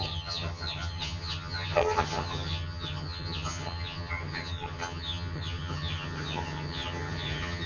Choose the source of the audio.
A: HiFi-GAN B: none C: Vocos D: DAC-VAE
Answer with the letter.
A